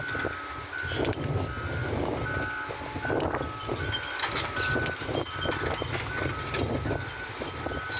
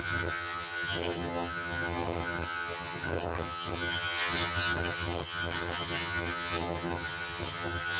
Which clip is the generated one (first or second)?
second